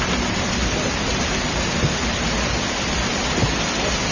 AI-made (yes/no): no